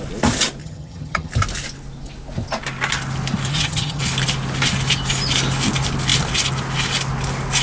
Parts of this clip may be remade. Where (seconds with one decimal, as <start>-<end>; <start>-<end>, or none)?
0.6-1.3; 3.5-4.0